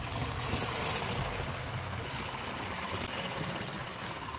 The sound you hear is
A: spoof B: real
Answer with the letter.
B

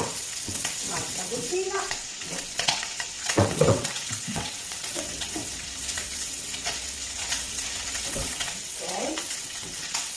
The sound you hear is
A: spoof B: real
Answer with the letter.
A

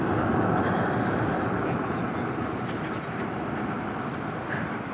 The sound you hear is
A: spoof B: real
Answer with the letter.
B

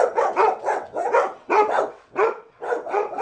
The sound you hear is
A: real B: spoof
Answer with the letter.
B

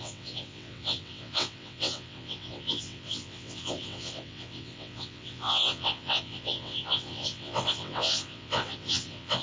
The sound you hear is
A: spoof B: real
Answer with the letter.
A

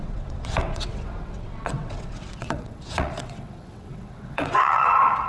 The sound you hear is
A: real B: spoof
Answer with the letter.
B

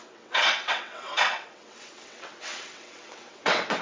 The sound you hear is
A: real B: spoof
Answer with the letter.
B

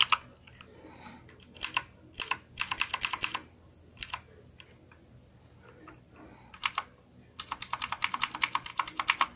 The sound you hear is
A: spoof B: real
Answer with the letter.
B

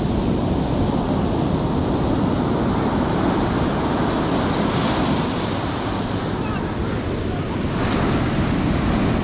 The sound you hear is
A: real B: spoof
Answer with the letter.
A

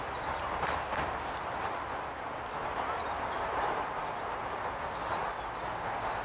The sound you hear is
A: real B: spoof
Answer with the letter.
A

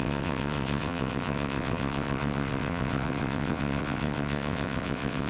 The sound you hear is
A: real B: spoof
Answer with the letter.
B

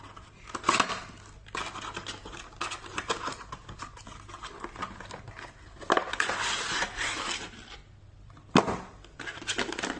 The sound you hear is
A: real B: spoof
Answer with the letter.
A